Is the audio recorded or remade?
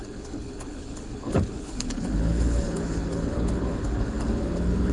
remade